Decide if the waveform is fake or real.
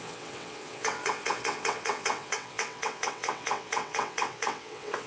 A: fake